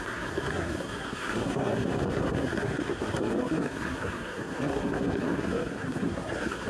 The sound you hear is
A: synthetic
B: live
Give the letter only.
A